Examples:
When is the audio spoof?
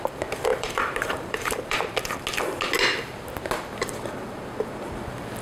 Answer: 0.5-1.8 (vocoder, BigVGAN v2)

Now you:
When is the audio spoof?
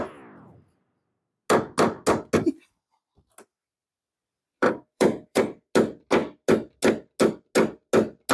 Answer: 3.5-5.4 (vocoder, BigVGAN v2)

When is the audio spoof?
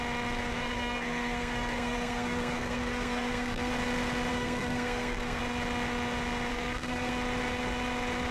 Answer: 0.5-3.7 (codec, SNAC); 4.3-5.4; 6.5-7.1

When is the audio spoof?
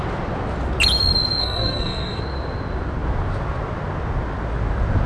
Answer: 1.4-2.2 (codec, SNAC)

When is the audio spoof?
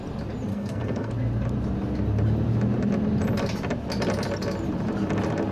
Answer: 0.5-1.1 (codec, SNAC)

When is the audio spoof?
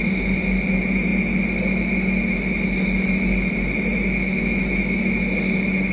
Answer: none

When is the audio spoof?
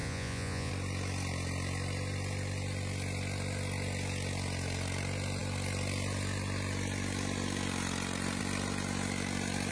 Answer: 0.0-0.7 (vocoder, Vocos)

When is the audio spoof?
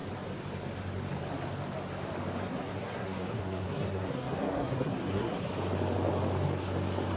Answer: 2.5-5.5 (codec, SNAC)